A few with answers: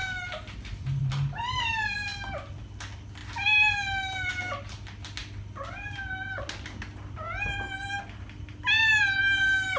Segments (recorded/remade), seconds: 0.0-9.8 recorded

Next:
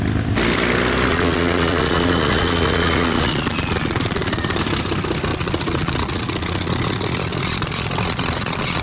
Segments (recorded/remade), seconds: 0.0-1.1 recorded; 1.1-4.6 remade; 4.6-5.3 recorded; 5.3-8.8 remade

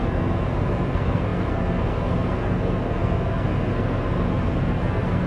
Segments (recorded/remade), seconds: 0.0-5.3 remade